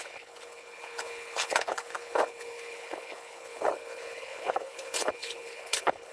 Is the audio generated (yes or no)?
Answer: yes